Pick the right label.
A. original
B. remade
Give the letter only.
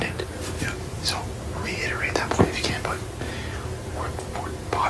A